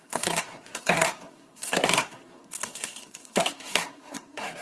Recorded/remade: remade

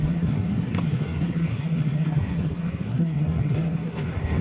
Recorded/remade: remade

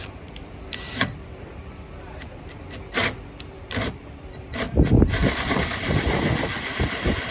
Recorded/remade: remade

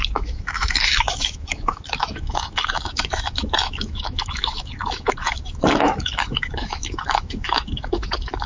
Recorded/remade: remade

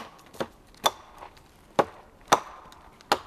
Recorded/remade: recorded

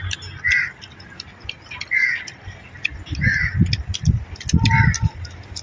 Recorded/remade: recorded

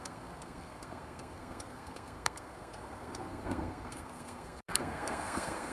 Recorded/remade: remade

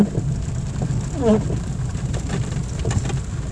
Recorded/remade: remade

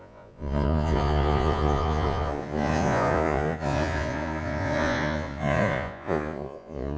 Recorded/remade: remade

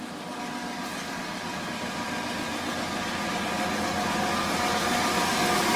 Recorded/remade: recorded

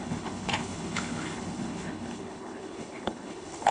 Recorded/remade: remade